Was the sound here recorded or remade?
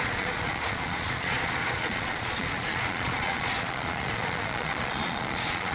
remade